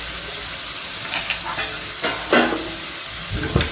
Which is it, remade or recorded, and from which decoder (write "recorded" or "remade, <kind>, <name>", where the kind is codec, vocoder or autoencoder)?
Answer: recorded